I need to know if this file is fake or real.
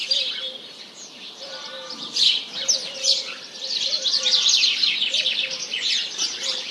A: fake